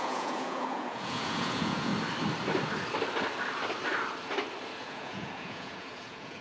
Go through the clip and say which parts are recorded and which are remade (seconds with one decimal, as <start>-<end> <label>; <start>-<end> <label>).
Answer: 0.0-1.9 remade; 1.9-4.8 recorded; 4.8-6.4 remade